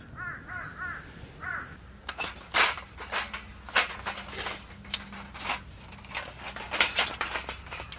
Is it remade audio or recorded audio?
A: recorded